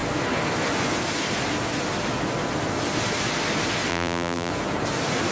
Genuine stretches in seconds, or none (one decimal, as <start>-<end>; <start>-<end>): 0.0-3.9; 4.5-5.3